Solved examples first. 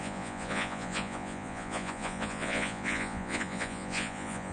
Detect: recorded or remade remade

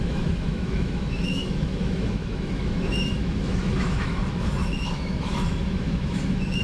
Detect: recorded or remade remade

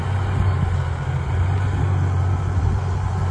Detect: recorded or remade recorded